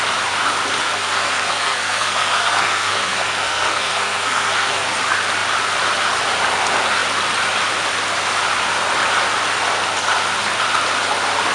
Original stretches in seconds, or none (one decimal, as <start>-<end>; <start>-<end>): 0.0-0.8; 5.0-11.5

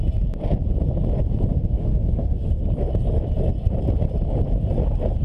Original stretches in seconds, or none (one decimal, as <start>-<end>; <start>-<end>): 0.0-1.5; 2.6-5.2

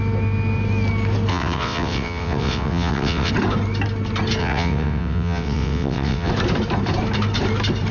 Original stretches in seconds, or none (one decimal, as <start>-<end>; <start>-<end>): 0.0-1.3; 3.3-4.4; 6.3-7.9

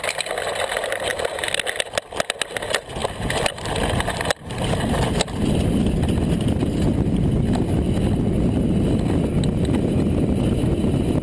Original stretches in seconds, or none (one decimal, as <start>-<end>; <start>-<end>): 0.0-11.2

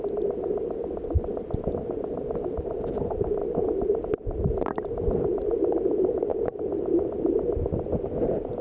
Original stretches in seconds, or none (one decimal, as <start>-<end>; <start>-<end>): 0.0-3.4; 4.0-6.3; 8.1-8.6

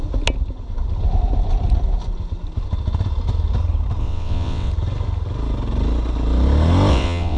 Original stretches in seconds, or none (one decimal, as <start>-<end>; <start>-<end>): 0.0-4.0; 4.7-6.9

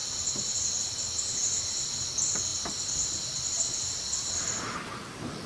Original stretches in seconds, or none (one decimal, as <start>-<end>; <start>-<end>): 1.6-5.5

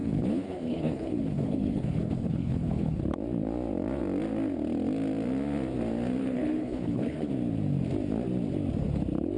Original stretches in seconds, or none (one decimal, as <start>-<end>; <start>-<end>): 3.0-6.2; 7.3-9.4